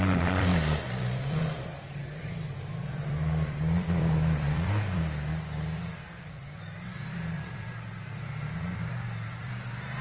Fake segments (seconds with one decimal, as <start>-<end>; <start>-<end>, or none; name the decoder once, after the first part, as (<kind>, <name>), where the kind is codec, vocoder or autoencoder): 0.0-10.0 (vocoder, BigVGAN v2)